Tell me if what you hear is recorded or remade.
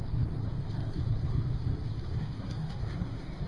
remade